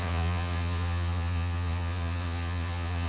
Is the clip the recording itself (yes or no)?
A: no